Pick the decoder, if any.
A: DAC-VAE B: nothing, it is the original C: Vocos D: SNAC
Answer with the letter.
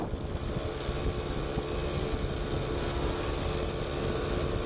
B